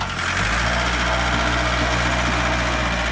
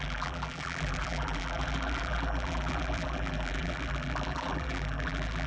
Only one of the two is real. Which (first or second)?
first